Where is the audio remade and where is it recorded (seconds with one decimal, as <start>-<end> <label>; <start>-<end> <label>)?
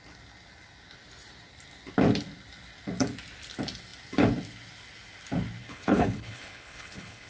0.0-5.6 recorded; 5.6-7.3 remade